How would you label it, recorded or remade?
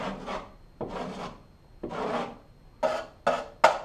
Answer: recorded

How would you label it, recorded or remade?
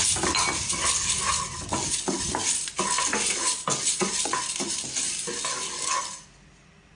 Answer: recorded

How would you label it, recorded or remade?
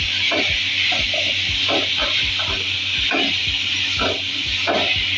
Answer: recorded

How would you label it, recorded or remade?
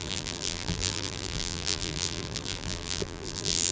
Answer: remade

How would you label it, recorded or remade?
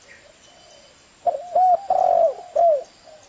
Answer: recorded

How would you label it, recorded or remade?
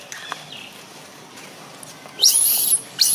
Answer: recorded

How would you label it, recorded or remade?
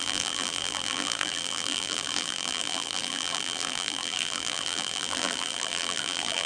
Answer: remade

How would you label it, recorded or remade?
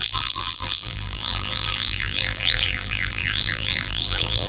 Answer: remade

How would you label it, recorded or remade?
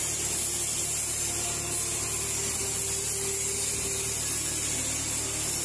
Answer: recorded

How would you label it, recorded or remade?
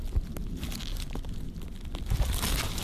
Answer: recorded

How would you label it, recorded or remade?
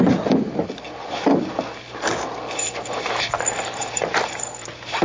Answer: remade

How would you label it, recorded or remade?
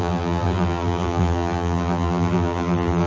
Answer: remade